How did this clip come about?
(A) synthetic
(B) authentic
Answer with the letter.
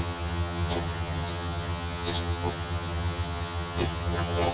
A